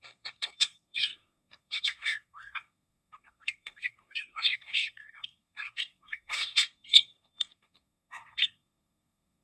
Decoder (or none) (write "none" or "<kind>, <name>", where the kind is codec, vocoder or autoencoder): codec, SNAC